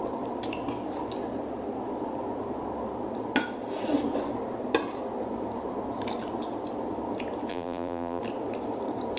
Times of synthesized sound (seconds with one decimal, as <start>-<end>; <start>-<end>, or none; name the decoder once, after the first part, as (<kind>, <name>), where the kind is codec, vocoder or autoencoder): 7.5-8.2 (vocoder, BigVGAN v2)